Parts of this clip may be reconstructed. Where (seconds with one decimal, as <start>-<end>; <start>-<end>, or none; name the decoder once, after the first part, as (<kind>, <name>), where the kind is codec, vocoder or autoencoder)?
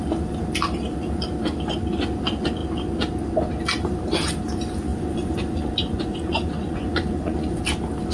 4.9-7.6 (vocoder, Vocos)